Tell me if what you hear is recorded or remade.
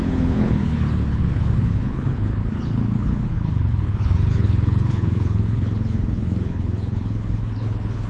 remade